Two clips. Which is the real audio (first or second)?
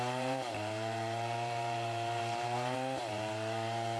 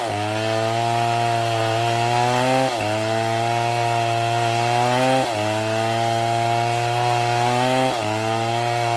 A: second